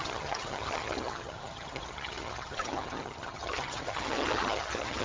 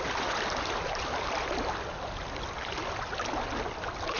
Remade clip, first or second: first